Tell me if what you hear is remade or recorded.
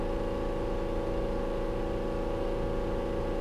recorded